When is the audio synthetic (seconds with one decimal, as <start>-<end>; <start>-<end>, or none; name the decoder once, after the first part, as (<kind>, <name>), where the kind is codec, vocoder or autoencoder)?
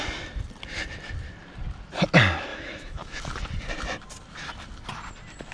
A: 2.5-3.2 (autoencoder, DAC-VAE)